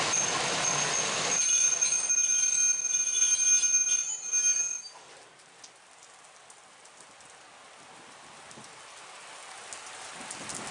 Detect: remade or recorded recorded